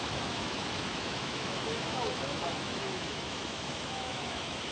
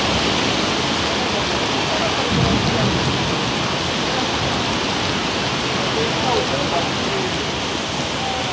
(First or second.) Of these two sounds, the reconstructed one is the first